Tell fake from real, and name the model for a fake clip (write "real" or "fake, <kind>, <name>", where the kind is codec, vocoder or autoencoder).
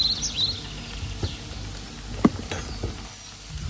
real